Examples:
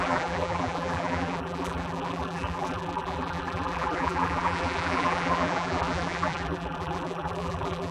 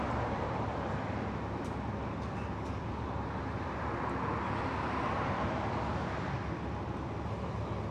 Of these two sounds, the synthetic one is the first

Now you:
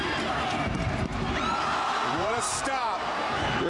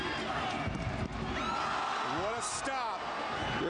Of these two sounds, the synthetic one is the first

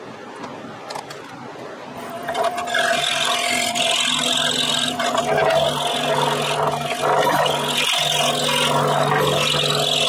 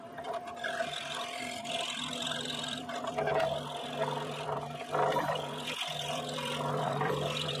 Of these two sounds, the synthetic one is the second